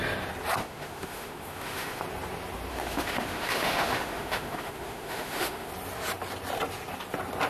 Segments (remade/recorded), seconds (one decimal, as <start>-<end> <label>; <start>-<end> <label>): 0.0-0.6 recorded; 0.6-2.0 remade; 2.0-2.7 recorded; 2.7-5.7 remade; 5.7-7.5 recorded